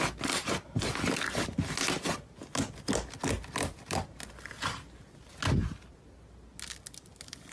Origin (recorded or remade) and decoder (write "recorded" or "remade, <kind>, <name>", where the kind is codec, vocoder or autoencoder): recorded